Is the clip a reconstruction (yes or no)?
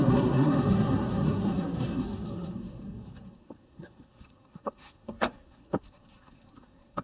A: yes